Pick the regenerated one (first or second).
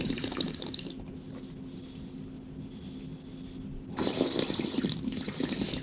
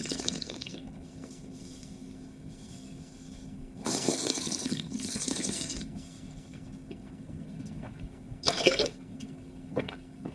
second